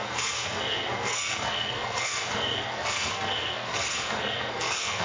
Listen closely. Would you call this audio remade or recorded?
remade